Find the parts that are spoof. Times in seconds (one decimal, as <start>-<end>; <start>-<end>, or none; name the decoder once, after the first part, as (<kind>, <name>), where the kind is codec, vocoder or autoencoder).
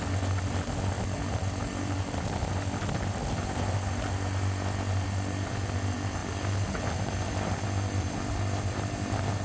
none